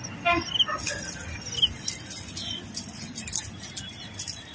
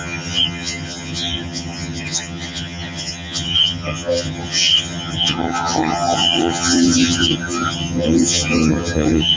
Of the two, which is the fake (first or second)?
second